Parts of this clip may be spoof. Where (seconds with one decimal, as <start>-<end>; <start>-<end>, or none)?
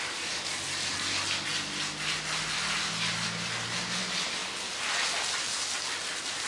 none